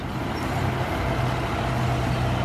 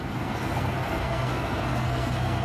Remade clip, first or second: second